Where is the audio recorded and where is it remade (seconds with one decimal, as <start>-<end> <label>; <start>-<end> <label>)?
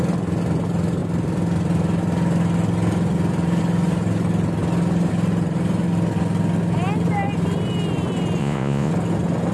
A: 0.0-8.4 recorded; 8.4-8.9 remade; 8.9-9.5 recorded